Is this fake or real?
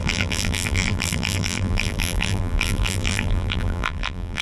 fake